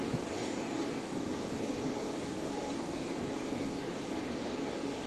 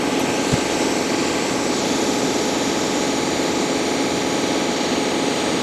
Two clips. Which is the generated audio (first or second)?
first